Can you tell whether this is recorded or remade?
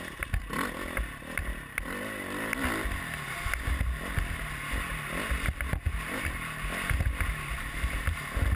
recorded